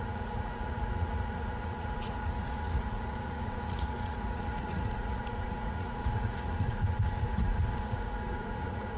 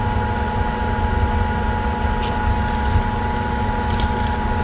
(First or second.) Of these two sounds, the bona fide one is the second